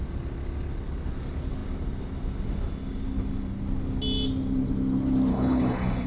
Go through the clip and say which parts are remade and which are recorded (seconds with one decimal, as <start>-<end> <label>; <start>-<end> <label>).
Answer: 0.0-5.3 recorded; 5.3-6.1 remade